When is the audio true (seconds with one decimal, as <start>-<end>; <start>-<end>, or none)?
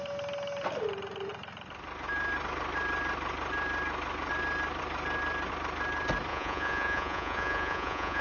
0.0-6.3